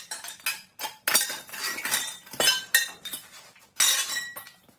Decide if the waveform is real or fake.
real